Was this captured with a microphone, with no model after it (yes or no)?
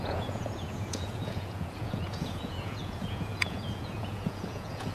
no